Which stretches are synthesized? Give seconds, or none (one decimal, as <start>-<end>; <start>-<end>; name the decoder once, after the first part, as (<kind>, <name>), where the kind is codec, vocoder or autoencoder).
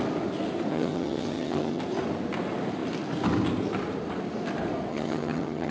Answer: 0.7-1.8 (vocoder, HiFi-GAN); 4.9-5.7